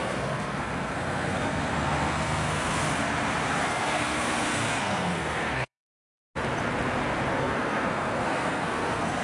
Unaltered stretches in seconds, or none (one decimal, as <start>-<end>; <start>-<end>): 2.8-3.6; 6.2-7.4